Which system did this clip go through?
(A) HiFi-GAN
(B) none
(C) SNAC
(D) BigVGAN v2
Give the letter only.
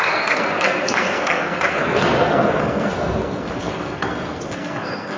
C